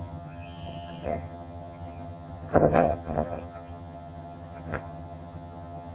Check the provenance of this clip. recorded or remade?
remade